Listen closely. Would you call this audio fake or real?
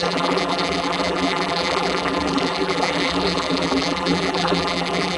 fake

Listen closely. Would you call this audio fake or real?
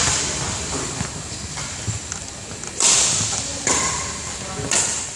real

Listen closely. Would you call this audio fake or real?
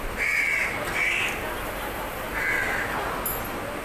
real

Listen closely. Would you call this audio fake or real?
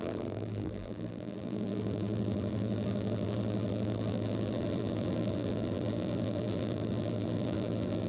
fake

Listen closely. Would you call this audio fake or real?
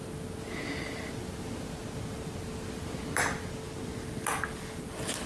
real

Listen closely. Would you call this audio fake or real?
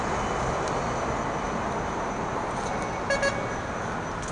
real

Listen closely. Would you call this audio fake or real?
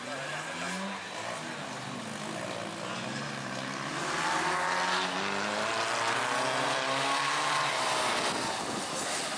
real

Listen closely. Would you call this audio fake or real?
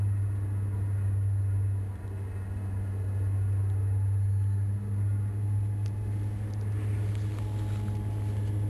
real